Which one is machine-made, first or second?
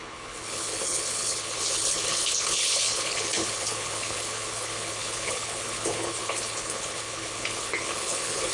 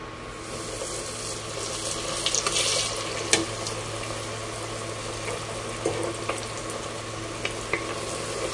first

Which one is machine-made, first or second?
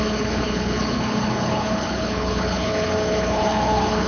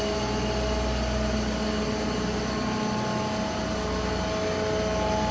first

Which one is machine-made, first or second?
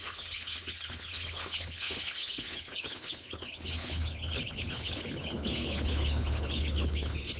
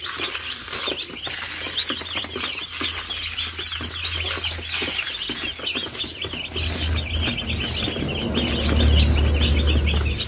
first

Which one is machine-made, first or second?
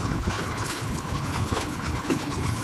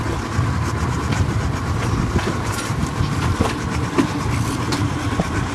first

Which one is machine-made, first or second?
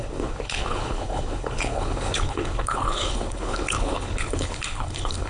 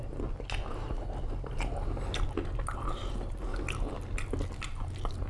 first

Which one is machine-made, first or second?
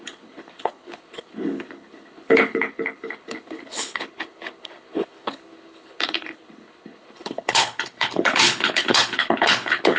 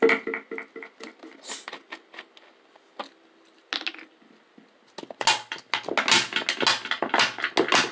first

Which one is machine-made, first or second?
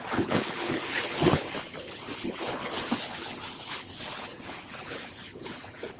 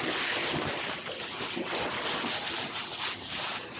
first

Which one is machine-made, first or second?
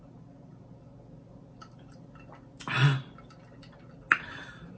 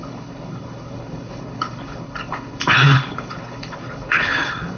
second